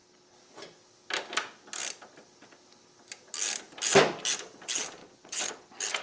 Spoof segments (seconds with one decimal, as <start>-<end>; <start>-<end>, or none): 5.0-5.5